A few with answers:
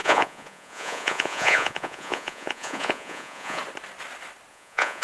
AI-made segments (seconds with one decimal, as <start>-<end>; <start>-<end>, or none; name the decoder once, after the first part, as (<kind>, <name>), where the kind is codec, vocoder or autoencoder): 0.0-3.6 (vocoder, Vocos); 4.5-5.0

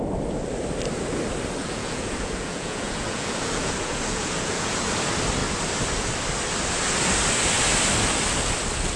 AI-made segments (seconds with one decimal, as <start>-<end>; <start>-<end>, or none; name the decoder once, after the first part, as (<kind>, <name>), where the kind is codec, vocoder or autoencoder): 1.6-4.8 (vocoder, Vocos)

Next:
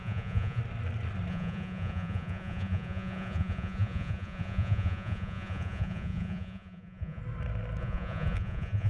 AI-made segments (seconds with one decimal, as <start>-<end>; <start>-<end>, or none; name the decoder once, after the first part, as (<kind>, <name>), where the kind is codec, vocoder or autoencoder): 0.0-0.6 (vocoder, Vocos); 1.3-7.2; 7.8-8.9

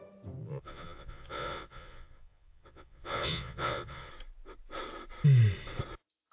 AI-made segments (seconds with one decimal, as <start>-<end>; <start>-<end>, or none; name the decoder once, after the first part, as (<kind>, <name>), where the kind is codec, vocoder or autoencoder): 0.4-4.1 (vocoder, Vocos)

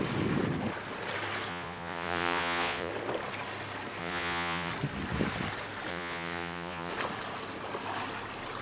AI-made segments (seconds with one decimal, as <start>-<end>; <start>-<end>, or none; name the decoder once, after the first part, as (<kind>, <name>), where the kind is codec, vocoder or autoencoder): 1.5-2.9 (vocoder, Vocos); 4.0-4.7; 5.9-6.9

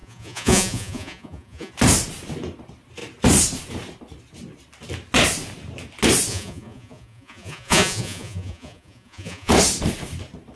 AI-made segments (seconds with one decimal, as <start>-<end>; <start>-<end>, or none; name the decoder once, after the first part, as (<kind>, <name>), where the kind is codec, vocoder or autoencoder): 0.0-1.7 (vocoder, Vocos); 6.3-9.5

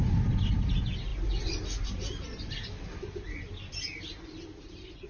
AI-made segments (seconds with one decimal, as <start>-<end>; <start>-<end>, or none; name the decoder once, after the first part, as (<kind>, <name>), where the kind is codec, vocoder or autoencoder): none

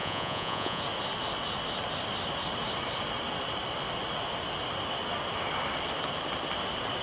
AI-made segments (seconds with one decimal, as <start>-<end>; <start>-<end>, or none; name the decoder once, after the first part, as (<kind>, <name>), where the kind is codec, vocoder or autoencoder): 0.0-0.8 (vocoder, Vocos)